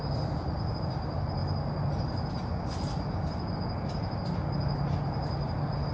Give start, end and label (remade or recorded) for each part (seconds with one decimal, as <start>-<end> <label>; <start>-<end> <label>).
0.0-5.9 recorded